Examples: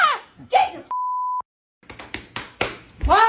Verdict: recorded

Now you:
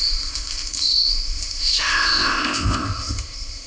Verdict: remade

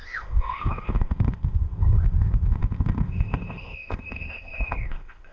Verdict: remade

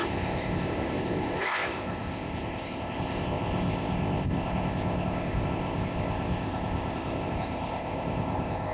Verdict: remade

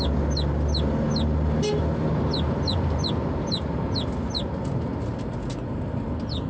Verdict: recorded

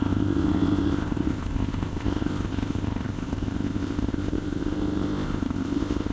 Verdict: remade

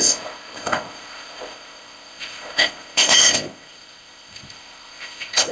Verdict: remade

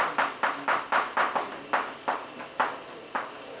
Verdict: recorded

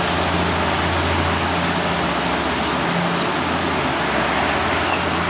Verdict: recorded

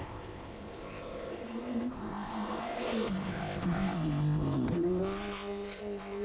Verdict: remade